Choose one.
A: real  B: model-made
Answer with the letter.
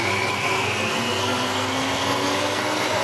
B